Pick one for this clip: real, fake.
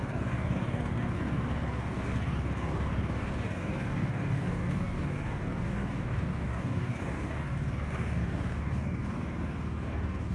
fake